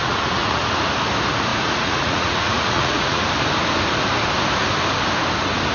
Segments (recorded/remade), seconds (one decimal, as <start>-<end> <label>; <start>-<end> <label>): 0.0-0.7 remade; 0.7-1.5 recorded; 1.5-3.2 remade; 3.2-5.7 recorded